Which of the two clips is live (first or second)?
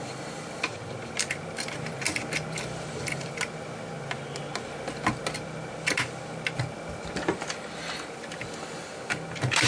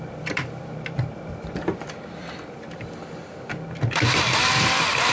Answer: first